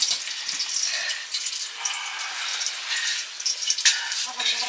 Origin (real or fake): real